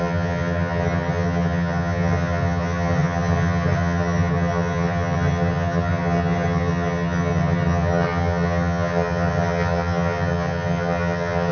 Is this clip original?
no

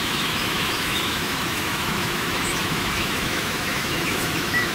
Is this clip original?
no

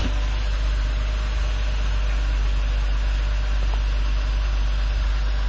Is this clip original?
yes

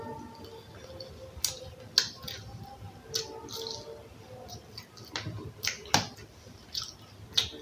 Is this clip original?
yes